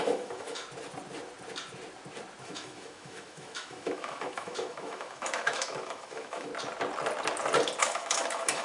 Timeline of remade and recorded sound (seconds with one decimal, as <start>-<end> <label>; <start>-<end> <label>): 0.0-0.6 remade; 0.6-2.4 recorded; 2.4-6.5 remade; 6.5-7.8 recorded; 7.8-8.6 remade

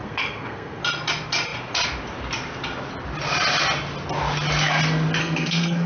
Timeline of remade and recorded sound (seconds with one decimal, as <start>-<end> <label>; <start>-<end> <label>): 0.0-0.8 remade; 0.8-5.2 recorded; 5.2-5.9 remade